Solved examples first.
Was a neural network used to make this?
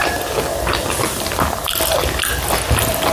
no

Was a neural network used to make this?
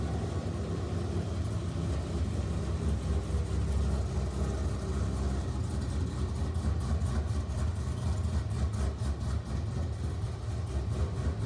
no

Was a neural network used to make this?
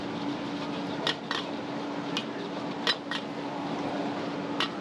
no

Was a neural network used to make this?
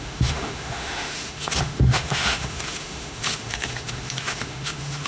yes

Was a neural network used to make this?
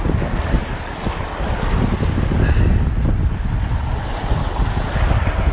no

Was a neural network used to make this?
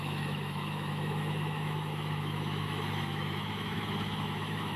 yes